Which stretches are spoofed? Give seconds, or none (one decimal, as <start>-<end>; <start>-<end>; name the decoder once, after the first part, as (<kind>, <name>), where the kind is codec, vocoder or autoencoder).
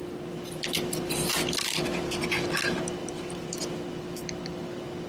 none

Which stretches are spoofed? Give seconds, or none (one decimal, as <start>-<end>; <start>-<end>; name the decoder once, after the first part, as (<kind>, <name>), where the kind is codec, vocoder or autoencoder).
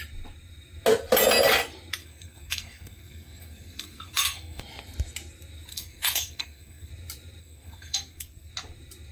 2.0-4.6 (codec, SNAC); 5.7-6.9; 7.4-8.5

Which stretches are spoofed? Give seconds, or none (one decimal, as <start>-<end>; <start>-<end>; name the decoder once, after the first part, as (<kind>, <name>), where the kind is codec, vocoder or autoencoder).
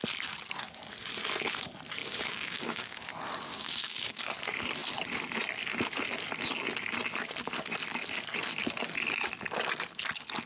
2.0-3.0 (codec, DAC); 3.5-4.2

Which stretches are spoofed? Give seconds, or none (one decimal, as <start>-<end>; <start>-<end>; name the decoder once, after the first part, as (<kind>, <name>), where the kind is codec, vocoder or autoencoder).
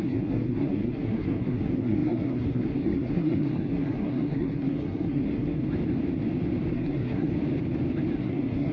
0.0-5.6 (codec, SNAC); 6.7-7.3; 8.2-8.7